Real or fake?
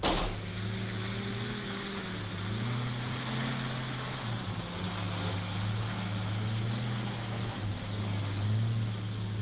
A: real